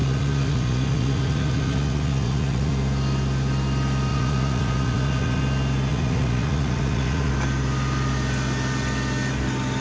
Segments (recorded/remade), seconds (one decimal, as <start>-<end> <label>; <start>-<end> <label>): 0.0-2.7 remade; 2.7-4.1 recorded; 4.1-5.4 remade; 5.4-5.9 recorded; 5.9-7.3 remade; 7.3-9.8 recorded